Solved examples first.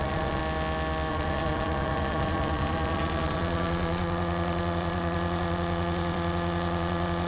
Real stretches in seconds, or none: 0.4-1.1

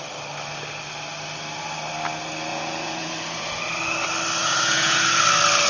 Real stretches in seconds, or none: 0.0-2.5; 3.6-4.4; 5.2-5.7

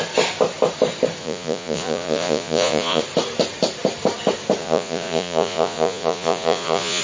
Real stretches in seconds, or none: 0.0-1.2; 3.0-4.6